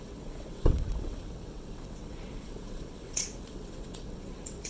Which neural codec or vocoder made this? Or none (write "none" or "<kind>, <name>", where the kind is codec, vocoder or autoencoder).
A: vocoder, WaveNeXt